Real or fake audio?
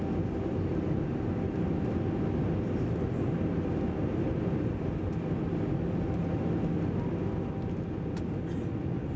real